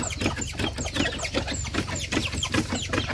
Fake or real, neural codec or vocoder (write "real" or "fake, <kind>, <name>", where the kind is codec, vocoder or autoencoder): real